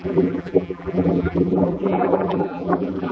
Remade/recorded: remade